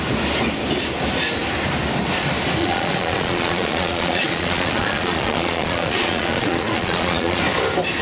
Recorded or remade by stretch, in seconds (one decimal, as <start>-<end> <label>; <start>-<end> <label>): 0.0-2.6 recorded; 2.6-7.4 remade; 7.4-8.0 recorded